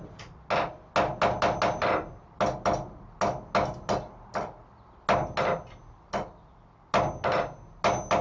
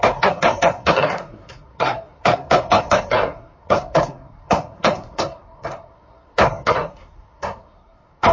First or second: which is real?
first